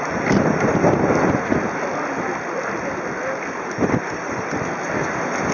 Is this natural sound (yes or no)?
yes